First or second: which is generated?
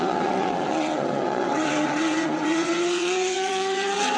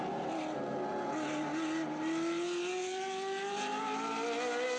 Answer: first